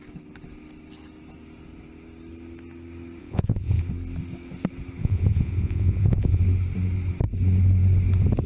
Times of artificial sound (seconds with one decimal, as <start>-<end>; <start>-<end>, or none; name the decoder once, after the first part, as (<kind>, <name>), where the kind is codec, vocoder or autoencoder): 3.2-3.8 (vocoder, Vocos); 5.0-6.4